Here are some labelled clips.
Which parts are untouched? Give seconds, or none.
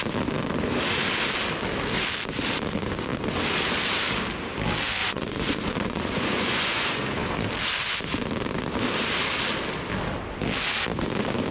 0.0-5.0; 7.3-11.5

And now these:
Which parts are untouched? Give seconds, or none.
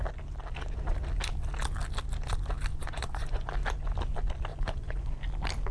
0.0-2.7; 3.5-4.5; 5.2-5.7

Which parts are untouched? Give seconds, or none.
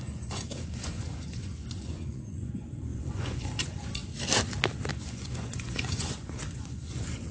4.0-4.9